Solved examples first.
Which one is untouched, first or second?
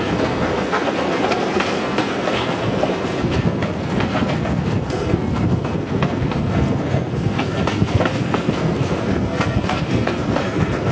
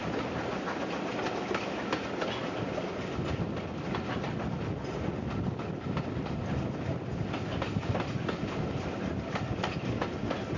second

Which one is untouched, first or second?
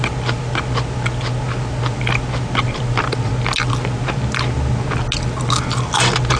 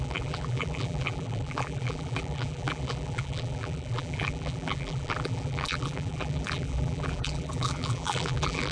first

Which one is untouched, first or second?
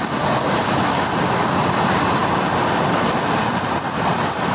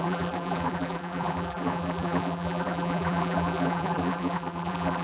first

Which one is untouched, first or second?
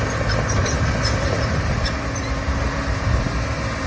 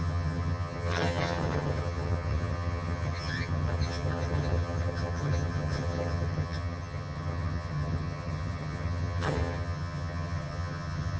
first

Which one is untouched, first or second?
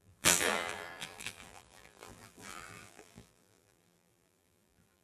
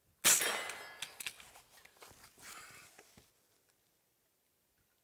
second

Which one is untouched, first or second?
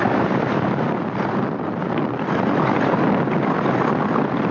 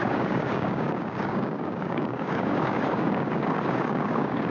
first